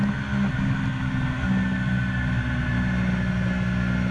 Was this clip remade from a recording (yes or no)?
no